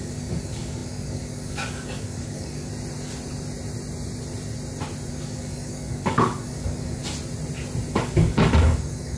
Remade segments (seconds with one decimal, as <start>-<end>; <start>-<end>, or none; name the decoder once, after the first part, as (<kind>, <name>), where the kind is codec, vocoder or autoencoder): 0.0-2.7 (codec, DAC); 5.1-7.0; 7.9-9.2